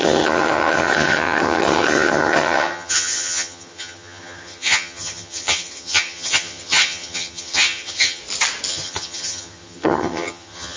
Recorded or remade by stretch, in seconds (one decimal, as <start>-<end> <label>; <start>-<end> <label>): 0.0-8.2 remade; 8.2-8.7 recorded; 8.7-10.8 remade